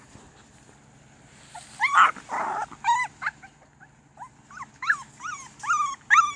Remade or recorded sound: recorded